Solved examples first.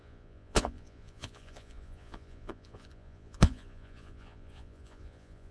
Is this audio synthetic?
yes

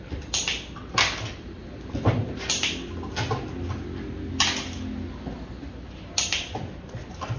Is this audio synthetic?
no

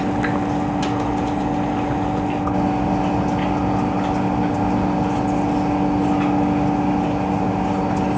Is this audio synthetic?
no